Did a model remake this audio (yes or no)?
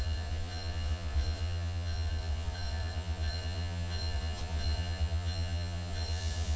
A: yes